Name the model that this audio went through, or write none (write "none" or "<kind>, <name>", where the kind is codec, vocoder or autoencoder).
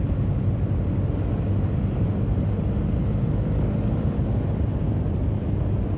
none